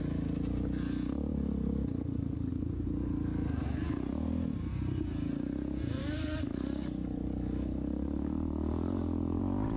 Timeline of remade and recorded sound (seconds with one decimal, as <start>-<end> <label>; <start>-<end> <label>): 0.0-1.3 recorded; 1.3-2.5 remade; 2.5-6.0 recorded; 6.0-9.4 remade; 9.4-9.8 recorded